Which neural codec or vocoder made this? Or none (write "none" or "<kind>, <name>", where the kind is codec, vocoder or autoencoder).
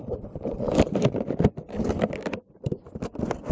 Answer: none